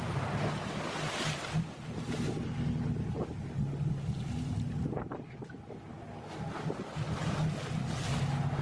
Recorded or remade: recorded